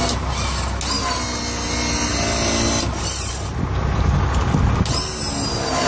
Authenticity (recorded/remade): recorded